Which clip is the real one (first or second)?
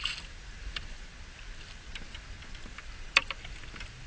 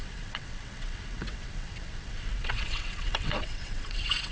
first